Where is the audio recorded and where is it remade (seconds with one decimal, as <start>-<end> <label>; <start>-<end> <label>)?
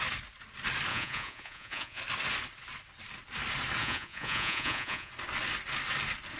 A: 0.0-0.9 recorded; 0.9-2.0 remade; 2.0-3.8 recorded; 3.8-5.1 remade; 5.1-6.4 recorded